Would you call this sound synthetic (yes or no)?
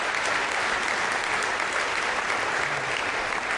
no